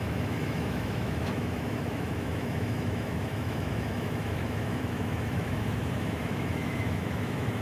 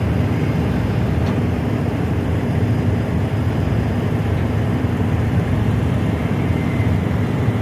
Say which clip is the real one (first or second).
second